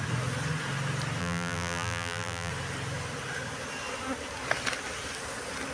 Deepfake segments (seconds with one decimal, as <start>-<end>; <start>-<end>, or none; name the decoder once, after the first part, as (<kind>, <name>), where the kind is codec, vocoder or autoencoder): 1.2-2.5 (vocoder, BigVGAN v2)